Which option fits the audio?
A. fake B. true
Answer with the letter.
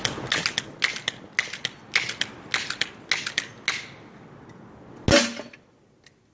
B